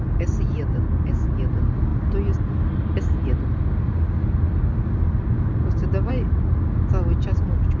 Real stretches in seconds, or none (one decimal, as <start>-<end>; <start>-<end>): 0.0-7.8